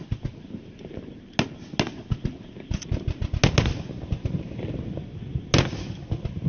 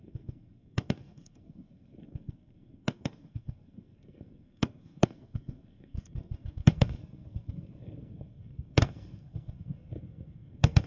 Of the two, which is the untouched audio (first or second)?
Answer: first